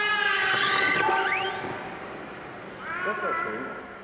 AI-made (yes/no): no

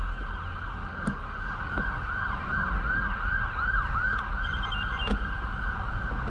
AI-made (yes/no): no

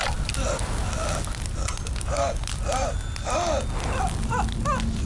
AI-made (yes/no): no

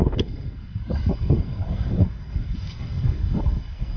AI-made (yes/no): yes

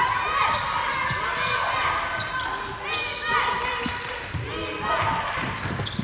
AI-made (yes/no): no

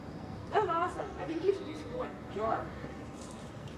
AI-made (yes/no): yes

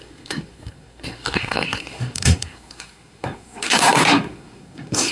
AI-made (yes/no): yes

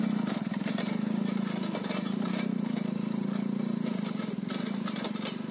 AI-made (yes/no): no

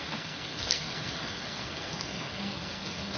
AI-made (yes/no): yes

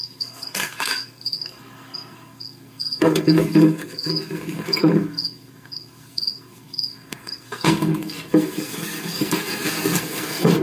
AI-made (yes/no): yes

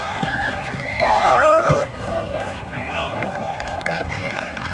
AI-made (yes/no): yes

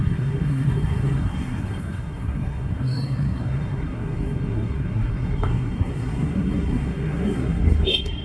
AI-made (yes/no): yes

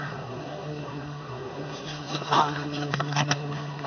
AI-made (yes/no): yes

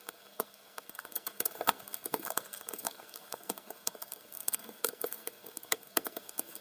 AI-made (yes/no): yes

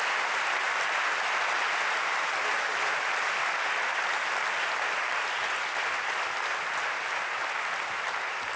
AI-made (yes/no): no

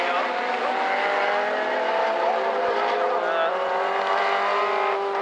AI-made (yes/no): no